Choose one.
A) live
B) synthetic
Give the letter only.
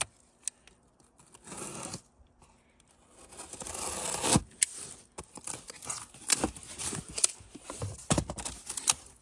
A